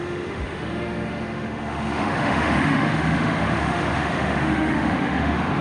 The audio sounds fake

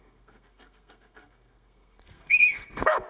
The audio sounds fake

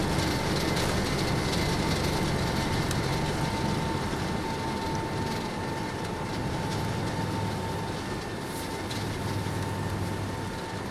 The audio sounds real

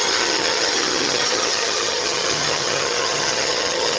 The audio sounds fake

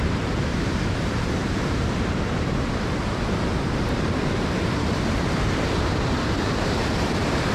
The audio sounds fake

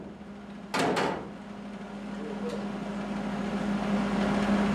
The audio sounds real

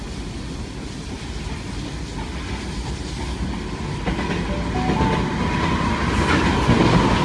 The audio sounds real